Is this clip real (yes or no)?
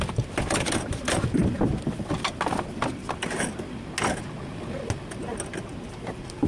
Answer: yes